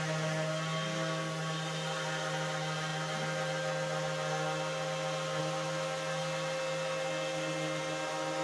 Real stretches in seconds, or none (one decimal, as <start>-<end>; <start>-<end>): 0.0-8.4